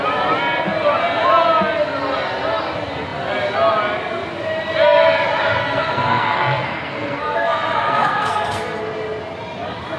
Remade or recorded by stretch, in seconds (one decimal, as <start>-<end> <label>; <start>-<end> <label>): 0.0-5.6 recorded; 5.6-8.8 remade; 8.8-10.0 recorded